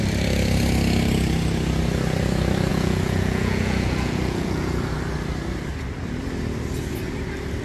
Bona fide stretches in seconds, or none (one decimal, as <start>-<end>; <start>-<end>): 0.0-2.7; 4.9-7.6